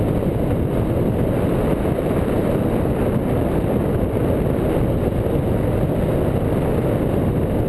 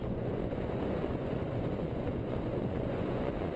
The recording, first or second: first